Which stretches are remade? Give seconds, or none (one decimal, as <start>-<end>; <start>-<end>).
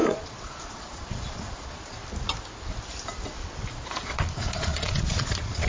0.0-2.0; 3.7-5.7